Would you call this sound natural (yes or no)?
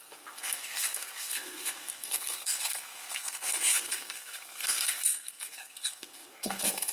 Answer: no